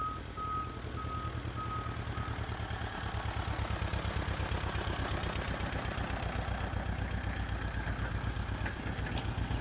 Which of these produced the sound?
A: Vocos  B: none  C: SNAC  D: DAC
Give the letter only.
B